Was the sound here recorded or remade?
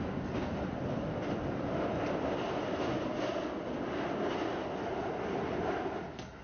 recorded